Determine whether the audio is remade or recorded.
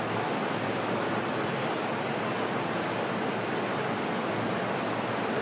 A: recorded